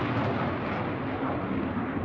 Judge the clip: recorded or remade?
recorded